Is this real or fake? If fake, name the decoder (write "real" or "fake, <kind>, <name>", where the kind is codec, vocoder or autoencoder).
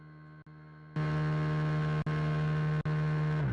real